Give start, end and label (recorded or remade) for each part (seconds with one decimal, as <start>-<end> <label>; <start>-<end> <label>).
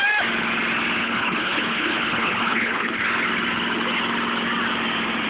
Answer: 0.0-1.0 recorded; 1.0-3.0 remade; 3.0-5.3 recorded